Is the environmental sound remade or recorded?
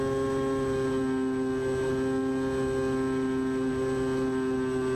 recorded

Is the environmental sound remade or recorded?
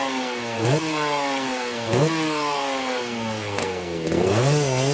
remade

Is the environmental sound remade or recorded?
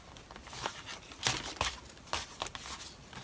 recorded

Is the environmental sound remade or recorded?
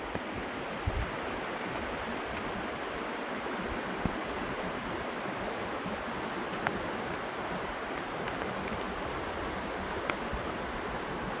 recorded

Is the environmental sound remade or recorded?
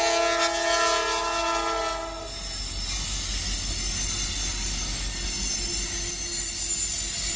recorded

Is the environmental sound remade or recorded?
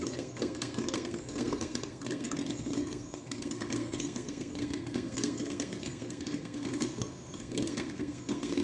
remade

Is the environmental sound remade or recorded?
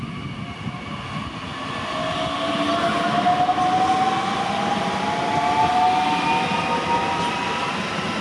recorded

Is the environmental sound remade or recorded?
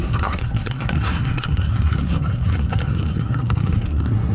remade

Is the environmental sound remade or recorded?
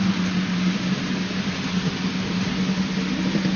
recorded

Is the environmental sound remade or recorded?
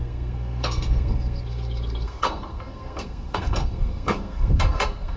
remade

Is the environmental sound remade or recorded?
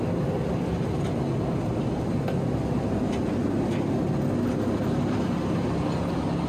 recorded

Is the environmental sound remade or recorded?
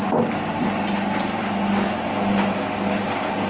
recorded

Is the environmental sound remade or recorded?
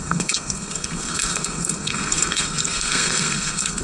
remade